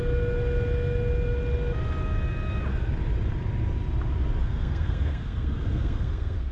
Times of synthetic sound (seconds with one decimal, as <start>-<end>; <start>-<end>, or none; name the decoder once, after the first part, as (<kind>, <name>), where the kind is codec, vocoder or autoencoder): 4.4-6.5 (codec, SNAC)